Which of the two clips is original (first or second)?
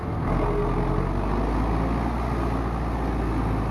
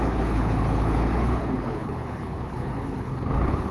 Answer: first